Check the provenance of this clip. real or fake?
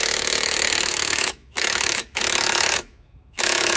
fake